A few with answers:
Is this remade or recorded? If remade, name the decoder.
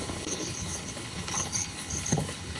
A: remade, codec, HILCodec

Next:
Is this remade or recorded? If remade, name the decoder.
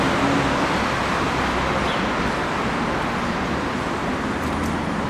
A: recorded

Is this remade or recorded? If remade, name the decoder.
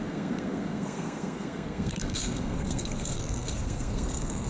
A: remade, codec, SNAC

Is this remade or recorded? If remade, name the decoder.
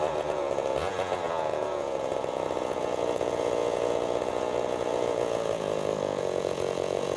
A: remade, vocoder, Vocos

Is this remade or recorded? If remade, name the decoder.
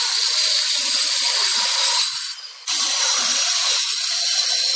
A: recorded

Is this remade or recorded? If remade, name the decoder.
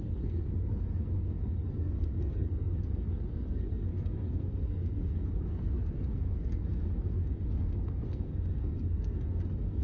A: remade, codec, SNAC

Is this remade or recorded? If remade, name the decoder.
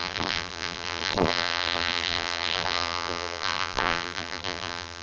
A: remade, vocoder, BigVGAN v2